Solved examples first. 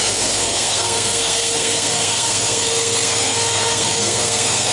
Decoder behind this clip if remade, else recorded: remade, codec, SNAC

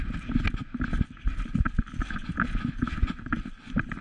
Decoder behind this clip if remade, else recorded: recorded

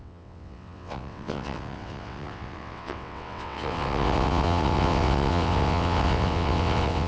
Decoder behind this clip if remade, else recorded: remade, vocoder, WaveNeXt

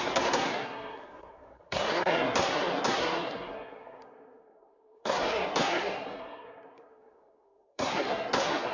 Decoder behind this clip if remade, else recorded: remade, codec, SNAC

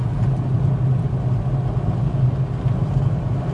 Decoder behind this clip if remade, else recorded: recorded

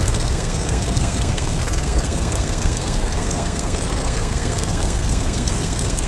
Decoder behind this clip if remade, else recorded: remade, codec, SNAC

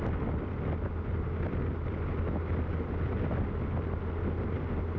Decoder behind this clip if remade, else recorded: recorded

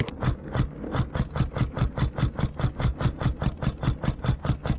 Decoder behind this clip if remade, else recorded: recorded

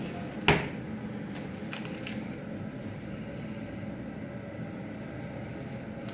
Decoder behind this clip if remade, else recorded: recorded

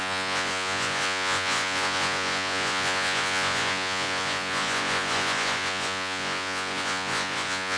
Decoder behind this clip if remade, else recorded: remade, vocoder, Vocos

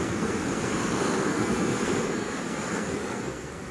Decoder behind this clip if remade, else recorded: remade, codec, SNAC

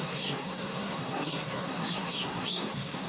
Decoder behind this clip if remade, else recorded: remade, codec, SNAC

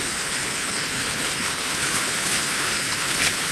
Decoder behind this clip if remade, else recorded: remade, codec, HILCodec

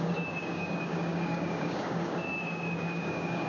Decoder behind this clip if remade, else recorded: remade, codec, DAC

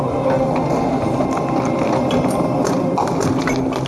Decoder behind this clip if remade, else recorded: recorded